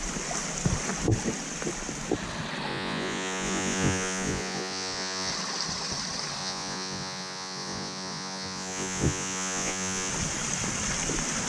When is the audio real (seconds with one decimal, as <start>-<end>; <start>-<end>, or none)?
0.0-2.7; 5.3-6.4; 10.1-11.5